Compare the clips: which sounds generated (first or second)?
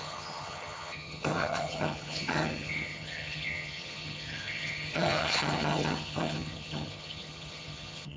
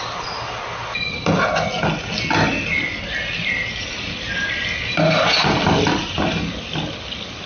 first